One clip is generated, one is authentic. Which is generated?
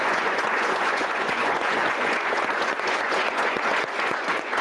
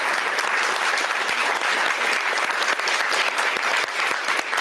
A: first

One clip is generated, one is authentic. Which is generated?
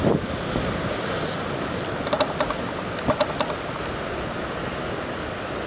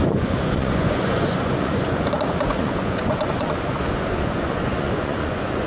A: second